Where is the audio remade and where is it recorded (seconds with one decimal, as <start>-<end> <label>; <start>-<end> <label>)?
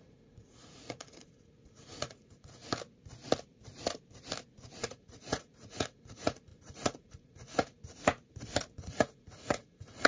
0.0-2.7 remade; 2.7-4.8 recorded; 4.8-7.8 remade; 7.8-8.7 recorded; 8.7-10.1 remade